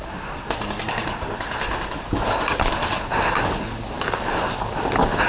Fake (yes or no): no